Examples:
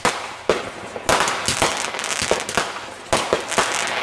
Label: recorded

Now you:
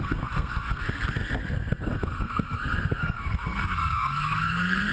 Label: remade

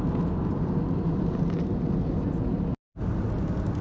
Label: recorded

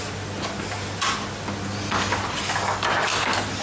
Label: recorded